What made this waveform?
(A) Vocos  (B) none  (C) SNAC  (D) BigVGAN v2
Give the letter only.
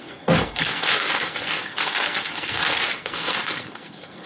C